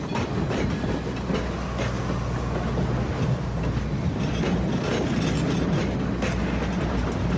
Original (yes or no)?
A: yes